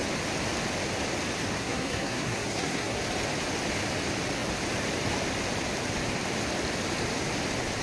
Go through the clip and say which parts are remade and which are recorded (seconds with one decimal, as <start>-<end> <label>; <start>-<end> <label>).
0.0-1.6 recorded; 1.6-3.0 remade; 3.0-7.8 recorded

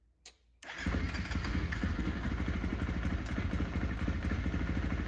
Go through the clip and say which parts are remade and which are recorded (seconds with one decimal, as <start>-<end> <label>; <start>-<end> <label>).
0.0-1.5 recorded; 1.5-2.3 remade; 2.3-5.1 recorded

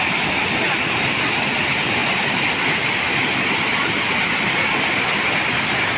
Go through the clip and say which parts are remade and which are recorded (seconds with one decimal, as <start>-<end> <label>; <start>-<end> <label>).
0.0-6.0 recorded